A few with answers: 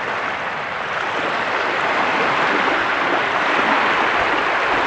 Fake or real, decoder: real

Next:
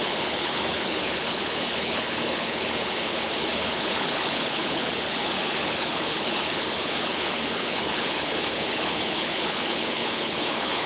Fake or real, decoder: fake, codec, HILCodec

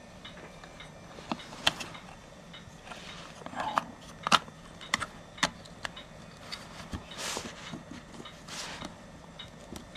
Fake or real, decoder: real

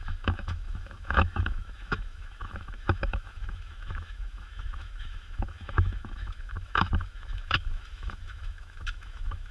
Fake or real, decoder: fake, autoencoder, DAC-VAE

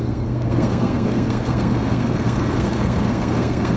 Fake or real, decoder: fake, codec, SNAC